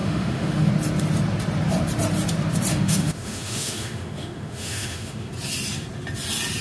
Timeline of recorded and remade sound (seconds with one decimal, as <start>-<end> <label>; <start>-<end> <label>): 0.0-0.7 remade; 0.7-2.7 recorded; 2.7-5.3 remade; 5.3-6.6 recorded